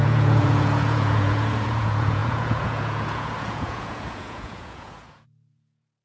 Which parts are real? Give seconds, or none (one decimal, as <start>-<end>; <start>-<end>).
none